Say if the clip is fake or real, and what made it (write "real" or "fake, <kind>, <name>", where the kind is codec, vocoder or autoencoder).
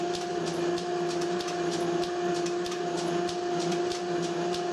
real